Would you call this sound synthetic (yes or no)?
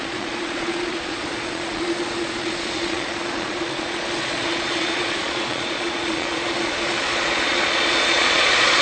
yes